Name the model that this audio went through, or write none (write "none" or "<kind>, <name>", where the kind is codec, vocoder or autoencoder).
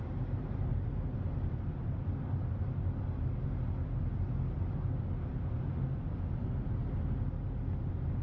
none